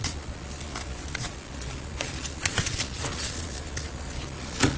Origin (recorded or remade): remade